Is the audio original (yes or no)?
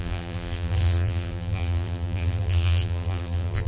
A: no